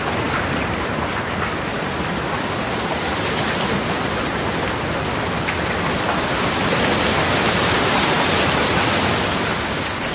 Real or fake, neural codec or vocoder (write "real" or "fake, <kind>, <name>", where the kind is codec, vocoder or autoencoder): real